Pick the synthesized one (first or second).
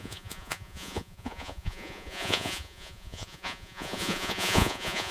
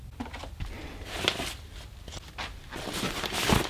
first